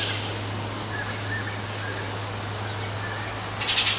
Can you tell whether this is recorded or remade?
recorded